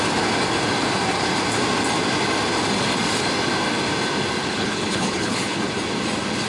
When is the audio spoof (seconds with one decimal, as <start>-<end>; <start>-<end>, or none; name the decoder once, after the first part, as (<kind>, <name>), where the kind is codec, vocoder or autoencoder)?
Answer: 4.4-5.7 (codec, HILCodec)